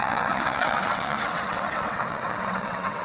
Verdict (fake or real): fake